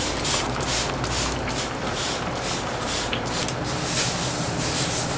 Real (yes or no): no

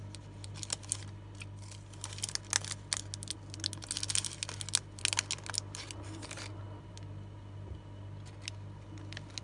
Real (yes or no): yes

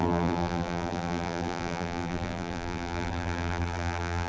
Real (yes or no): no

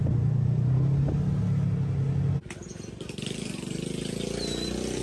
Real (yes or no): yes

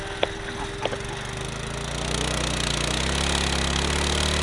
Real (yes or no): yes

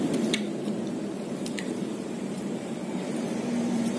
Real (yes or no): no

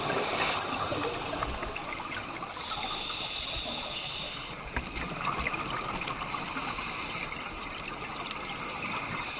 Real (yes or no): yes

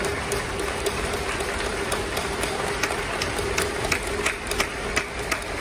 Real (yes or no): yes